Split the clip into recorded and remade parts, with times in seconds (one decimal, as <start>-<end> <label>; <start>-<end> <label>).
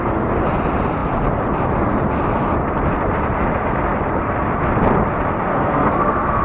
0.0-5.5 recorded; 5.5-6.4 remade